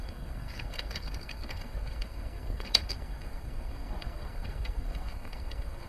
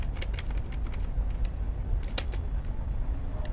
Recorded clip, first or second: second